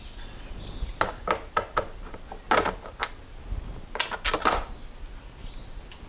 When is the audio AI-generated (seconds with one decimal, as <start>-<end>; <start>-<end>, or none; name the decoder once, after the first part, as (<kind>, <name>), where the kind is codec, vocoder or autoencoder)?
none